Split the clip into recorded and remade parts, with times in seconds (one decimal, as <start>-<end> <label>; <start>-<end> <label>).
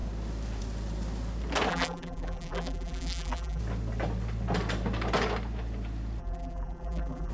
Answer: 0.0-1.7 recorded; 1.7-3.6 remade; 3.6-6.2 recorded; 6.2-7.3 remade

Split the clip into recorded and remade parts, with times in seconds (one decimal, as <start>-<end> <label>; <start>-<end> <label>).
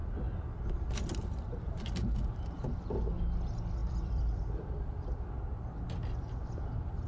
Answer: 0.0-3.1 remade; 3.1-3.8 recorded; 3.8-6.5 remade; 6.5-7.1 recorded